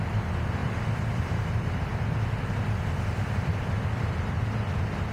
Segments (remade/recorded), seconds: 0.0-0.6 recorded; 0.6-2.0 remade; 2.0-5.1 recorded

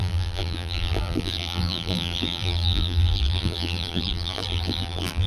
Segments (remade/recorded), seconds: 0.0-5.3 remade

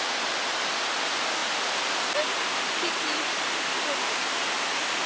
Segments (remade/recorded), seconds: 0.0-5.1 recorded

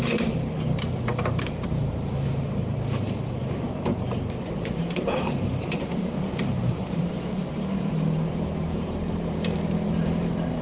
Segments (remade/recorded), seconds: 0.0-3.4 remade; 3.4-4.4 recorded; 4.4-10.6 remade

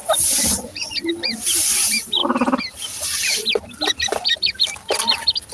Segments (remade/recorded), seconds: 0.0-1.1 remade; 1.1-2.2 recorded; 2.2-4.9 remade; 4.9-5.5 recorded

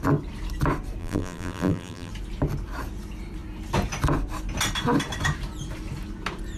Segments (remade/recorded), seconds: 0.0-1.0 recorded; 1.0-2.1 remade; 2.1-6.6 recorded